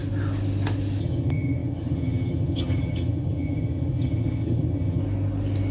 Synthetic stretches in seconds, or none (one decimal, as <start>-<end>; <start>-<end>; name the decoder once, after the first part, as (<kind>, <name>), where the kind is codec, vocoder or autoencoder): 1.0-5.0 (vocoder, HiFi-GAN)